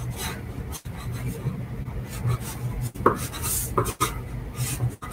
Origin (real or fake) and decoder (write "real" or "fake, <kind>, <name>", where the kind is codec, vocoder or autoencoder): real